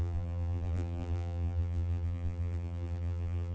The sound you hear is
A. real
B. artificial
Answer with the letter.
B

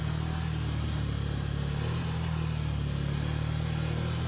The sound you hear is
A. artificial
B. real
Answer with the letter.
A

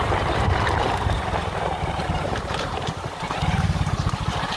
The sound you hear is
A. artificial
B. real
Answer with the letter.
A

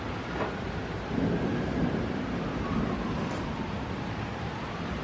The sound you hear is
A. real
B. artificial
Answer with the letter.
B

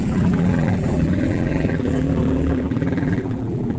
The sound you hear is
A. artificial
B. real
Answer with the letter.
A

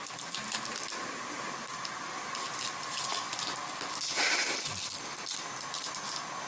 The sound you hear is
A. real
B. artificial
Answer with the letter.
A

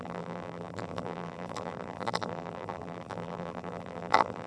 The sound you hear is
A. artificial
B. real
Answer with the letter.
A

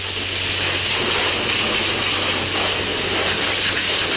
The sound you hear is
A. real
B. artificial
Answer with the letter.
A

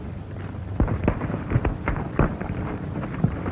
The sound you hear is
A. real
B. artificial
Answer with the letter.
B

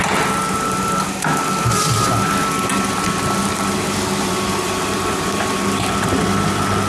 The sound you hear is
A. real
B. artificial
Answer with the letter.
A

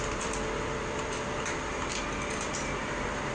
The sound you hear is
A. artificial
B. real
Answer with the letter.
A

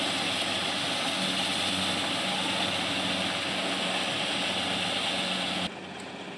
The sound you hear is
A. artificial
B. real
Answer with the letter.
B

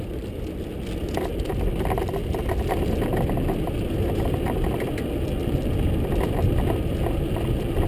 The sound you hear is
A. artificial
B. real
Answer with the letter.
B